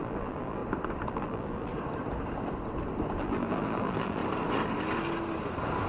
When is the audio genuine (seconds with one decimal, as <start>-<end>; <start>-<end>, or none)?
0.6-1.1; 1.7-3.2; 4.2-5.9

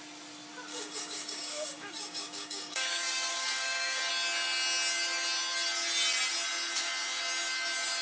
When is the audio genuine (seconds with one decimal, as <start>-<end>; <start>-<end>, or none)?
0.0-0.7; 4.1-8.0

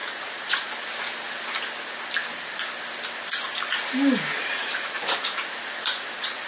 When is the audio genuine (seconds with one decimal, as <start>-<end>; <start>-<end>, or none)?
0.7-4.4

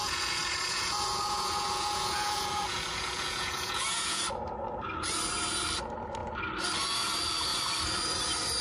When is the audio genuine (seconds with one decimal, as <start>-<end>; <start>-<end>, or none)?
4.2-8.6

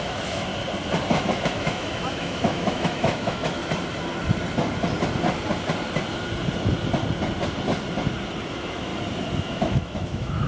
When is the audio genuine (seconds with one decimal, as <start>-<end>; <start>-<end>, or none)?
0.5-1.2; 3.6-8.5; 8.9-9.4